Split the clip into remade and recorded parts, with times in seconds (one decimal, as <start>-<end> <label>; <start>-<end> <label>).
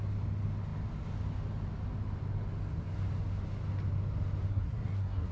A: 0.0-4.5 recorded; 4.5-5.3 remade